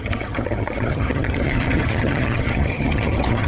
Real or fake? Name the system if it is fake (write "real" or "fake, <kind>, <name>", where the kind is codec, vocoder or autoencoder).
fake, vocoder, HiFi-GAN